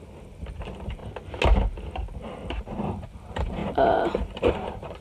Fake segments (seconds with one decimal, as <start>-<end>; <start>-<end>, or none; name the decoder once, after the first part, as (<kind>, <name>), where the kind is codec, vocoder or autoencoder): 0.0-1.0 (vocoder, BigVGAN v2); 2.6-5.0